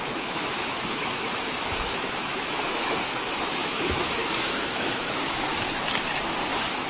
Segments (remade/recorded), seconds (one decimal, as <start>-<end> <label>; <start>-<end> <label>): 0.0-5.5 remade; 5.5-6.9 recorded